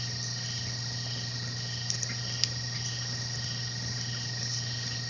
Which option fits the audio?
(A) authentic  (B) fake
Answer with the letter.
A